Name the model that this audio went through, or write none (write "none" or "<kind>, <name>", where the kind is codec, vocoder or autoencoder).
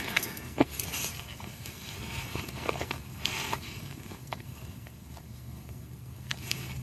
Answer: codec, SNAC